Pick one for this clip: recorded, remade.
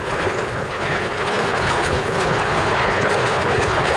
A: remade